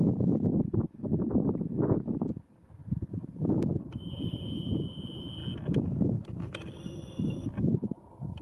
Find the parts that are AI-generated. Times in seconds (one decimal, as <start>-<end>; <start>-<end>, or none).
0.0-5.4; 7.3-8.4